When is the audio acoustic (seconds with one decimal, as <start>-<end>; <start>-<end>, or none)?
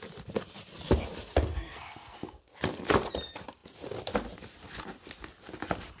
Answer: 0.0-1.5; 2.4-6.0